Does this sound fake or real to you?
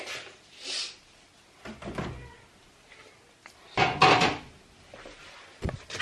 real